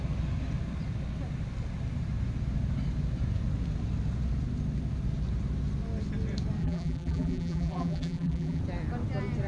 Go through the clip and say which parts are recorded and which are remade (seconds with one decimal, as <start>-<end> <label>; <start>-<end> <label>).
0.0-6.6 recorded; 6.6-8.6 remade; 8.6-9.5 recorded